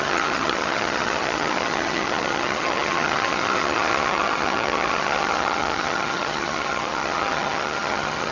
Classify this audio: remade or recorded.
remade